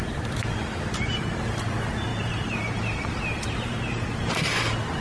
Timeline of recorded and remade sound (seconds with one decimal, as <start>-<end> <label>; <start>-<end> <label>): 0.0-2.1 recorded; 2.1-4.2 remade; 4.2-5.0 recorded